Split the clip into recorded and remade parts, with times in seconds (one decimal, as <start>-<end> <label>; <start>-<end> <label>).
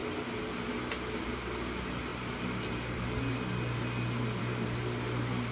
0.0-5.5 recorded